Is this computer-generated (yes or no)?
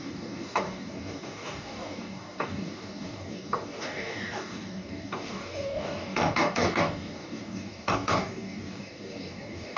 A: yes